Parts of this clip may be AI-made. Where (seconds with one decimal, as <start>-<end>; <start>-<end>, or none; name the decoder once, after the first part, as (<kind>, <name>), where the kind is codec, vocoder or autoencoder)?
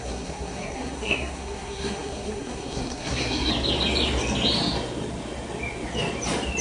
0.0-3.5 (codec, SNAC)